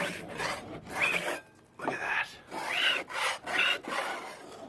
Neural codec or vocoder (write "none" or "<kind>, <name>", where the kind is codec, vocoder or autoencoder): none